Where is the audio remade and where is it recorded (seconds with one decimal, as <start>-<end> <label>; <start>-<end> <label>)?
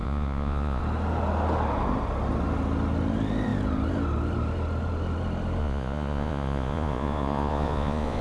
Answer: 0.0-0.8 remade; 0.8-5.6 recorded; 5.6-8.2 remade